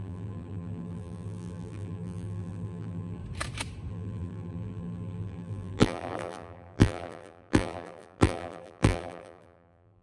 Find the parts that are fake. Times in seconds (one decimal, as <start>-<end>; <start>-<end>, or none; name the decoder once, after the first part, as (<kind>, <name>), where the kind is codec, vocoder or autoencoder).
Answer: 0.0-3.2 (vocoder, BigVGAN v2); 3.9-10.0